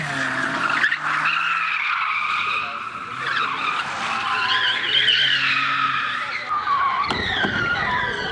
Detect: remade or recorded recorded